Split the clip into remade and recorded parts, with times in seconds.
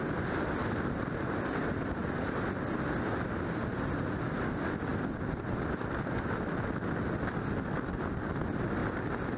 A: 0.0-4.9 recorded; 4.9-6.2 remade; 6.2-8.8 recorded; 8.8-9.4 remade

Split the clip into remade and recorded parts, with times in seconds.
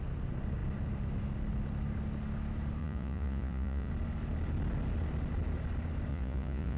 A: 0.0-2.8 recorded; 2.8-3.9 remade; 3.9-6.1 recorded; 6.1-6.8 remade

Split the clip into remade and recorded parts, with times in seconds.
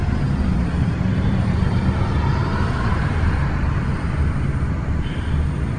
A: 0.0-0.5 recorded; 0.5-1.8 remade; 1.8-2.3 recorded; 2.3-3.3 remade; 3.3-5.8 recorded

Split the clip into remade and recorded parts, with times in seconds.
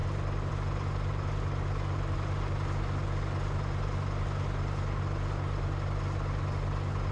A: 0.0-7.1 recorded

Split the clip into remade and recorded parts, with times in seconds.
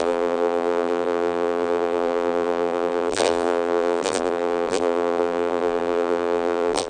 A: 0.0-6.9 remade